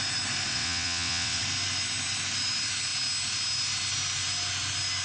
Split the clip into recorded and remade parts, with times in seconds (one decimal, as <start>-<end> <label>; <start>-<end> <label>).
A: 0.0-0.5 recorded; 0.5-1.4 remade; 1.4-5.0 recorded